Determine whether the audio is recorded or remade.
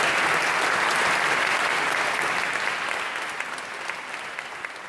recorded